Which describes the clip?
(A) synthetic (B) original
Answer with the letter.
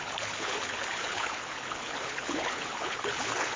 A